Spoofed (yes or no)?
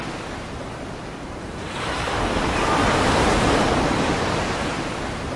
yes